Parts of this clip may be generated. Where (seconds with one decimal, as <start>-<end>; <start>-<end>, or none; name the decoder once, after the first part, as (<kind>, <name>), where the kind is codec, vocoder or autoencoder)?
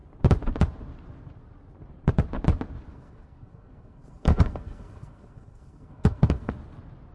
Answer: 2.9-6.5 (codec, SNAC)